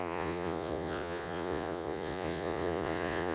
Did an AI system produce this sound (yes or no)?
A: yes